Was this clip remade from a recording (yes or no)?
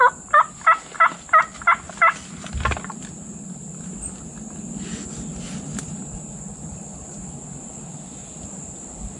no